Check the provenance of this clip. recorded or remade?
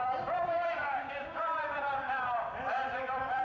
remade